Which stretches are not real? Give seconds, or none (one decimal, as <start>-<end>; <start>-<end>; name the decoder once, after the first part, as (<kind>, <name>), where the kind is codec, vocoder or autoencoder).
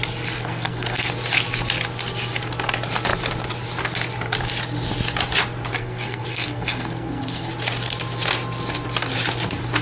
0.4-1.1 (codec, SNAC); 5.8-7.5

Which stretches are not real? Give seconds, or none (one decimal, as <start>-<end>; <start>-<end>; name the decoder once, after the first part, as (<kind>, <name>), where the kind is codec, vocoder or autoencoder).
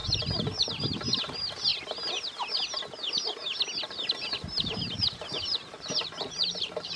0.0-1.7 (vocoder, BigVGAN v2); 3.9-7.0